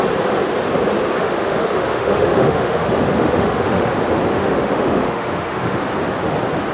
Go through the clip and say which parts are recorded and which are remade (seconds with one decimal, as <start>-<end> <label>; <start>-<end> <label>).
0.0-1.2 recorded; 1.2-3.9 remade; 3.9-4.3 recorded; 4.3-5.8 remade; 5.8-6.7 recorded